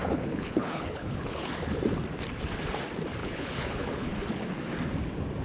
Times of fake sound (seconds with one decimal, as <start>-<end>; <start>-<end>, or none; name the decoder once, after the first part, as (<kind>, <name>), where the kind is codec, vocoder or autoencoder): 0.0-1.5 (codec, HILCodec); 3.2-4.1